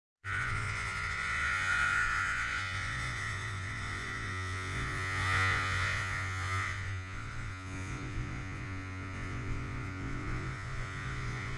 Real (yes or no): no